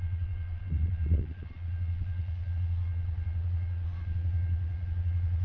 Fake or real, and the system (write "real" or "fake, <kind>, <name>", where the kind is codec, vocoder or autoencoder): fake, vocoder, Vocos